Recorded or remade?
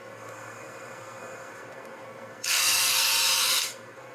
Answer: remade